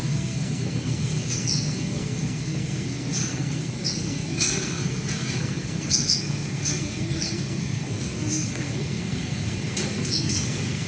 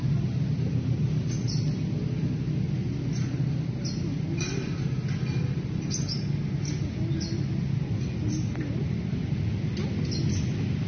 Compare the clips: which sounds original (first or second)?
second